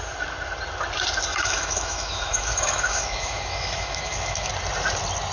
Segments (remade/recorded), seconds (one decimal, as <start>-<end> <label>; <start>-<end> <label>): 0.0-1.3 recorded; 1.3-4.5 remade; 4.5-5.3 recorded

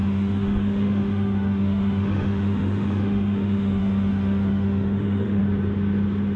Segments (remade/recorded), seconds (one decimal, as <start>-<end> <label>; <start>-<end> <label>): 0.0-5.4 remade; 5.4-6.4 recorded

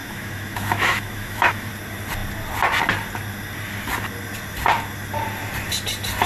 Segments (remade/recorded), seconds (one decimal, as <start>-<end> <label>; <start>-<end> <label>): 0.0-1.7 remade; 1.7-6.3 recorded